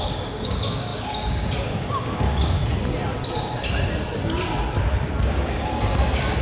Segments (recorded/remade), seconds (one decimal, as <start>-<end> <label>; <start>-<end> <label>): 0.0-2.6 remade; 2.6-5.2 recorded; 5.2-6.4 remade